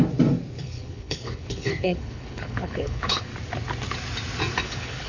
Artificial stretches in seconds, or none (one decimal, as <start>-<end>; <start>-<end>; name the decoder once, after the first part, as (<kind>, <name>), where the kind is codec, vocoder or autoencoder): 0.6-3.3 (codec, HILCodec); 4.6-5.1